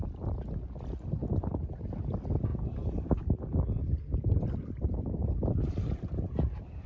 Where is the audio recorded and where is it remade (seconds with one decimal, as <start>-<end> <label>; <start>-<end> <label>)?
0.0-6.9 recorded